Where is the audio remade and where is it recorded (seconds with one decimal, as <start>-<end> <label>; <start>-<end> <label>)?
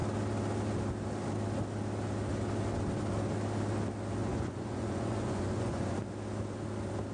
0.0-4.2 recorded; 4.2-6.0 remade; 6.0-7.1 recorded